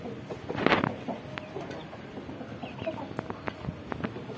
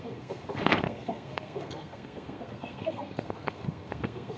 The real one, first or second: first